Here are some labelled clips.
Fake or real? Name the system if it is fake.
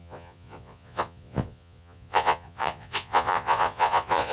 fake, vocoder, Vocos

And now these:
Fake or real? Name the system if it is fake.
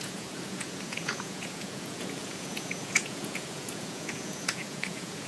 fake, vocoder, Vocos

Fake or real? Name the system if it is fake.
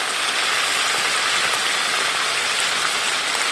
real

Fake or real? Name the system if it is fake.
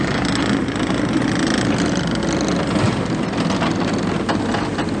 real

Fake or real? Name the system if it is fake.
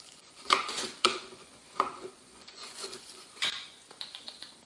fake, vocoder, Vocos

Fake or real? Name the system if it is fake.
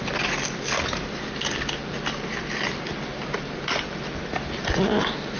real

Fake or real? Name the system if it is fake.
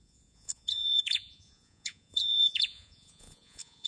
fake, vocoder, Vocos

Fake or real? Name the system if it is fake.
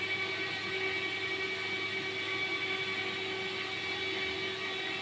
real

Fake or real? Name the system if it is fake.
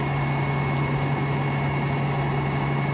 real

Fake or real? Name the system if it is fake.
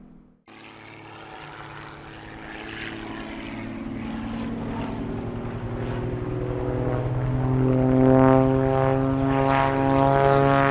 real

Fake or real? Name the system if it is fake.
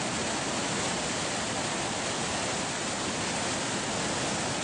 real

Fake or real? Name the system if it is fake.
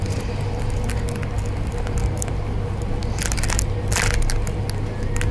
real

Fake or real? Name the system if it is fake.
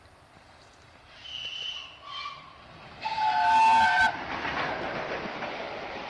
real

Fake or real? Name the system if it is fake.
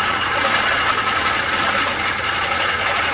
fake, vocoder, Vocos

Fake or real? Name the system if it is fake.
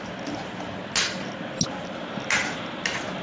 real